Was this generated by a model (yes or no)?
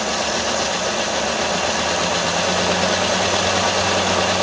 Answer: no